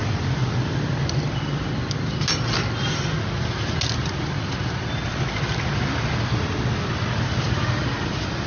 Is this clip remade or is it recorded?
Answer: recorded